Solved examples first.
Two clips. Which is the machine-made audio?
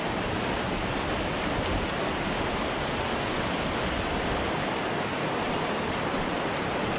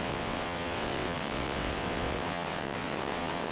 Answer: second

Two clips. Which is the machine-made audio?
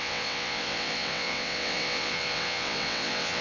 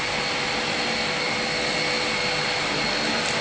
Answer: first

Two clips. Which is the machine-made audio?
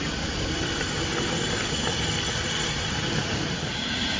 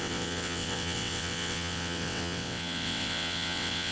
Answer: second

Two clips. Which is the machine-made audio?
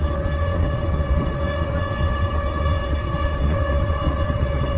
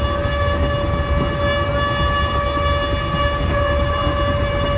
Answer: first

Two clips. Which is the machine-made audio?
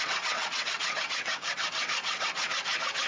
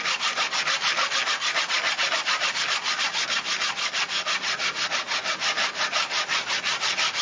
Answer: first